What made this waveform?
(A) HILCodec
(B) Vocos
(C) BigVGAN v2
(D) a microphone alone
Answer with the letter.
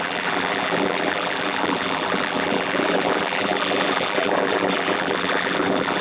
C